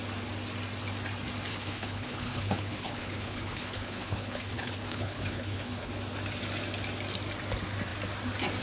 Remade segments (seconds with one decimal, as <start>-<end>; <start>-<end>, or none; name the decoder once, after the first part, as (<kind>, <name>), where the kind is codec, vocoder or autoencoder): 1.5-5.9 (codec, HILCodec)